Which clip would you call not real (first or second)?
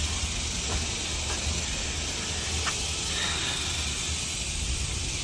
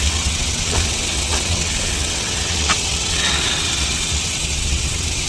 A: second